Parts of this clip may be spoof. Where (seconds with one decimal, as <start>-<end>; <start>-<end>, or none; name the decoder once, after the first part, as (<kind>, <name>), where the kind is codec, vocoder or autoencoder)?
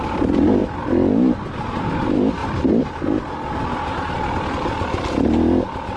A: none